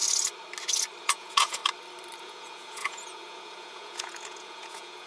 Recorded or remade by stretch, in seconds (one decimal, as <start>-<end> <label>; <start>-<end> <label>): 0.0-1.0 recorded; 1.0-1.6 remade; 1.6-2.2 recorded; 2.2-5.1 remade